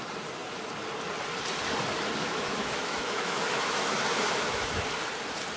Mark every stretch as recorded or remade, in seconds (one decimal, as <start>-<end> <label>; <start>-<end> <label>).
0.0-2.2 recorded; 2.2-4.9 remade; 4.9-5.6 recorded